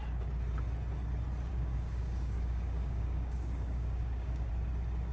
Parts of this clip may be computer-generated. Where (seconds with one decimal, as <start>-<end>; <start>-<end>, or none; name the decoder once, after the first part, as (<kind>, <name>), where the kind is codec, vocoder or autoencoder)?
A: 1.5-4.5 (codec, DAC)